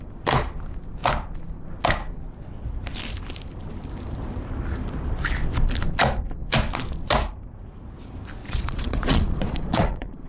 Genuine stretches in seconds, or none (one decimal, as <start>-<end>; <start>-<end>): 0.0-8.4